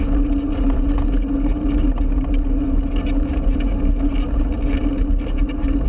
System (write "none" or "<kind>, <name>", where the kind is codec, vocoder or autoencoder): none